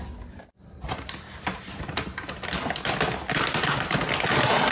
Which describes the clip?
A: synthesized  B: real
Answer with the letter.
B